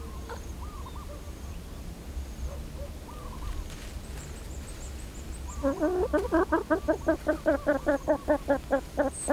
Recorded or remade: recorded